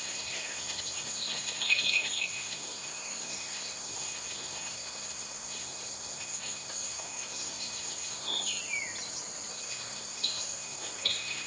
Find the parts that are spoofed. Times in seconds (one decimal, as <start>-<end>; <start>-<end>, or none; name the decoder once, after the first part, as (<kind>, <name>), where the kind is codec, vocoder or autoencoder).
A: 0.0-8.6 (codec, SNAC); 9.5-11.5